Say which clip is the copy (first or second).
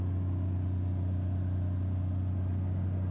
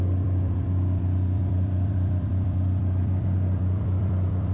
second